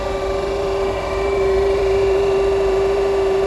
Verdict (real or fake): fake